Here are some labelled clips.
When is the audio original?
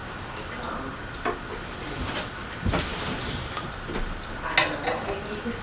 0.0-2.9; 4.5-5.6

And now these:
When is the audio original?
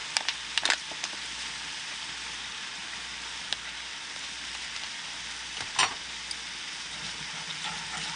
2.8-3.4; 5.8-7.0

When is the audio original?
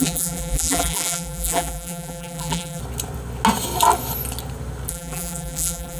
2.8-4.9